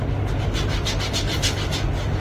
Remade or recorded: recorded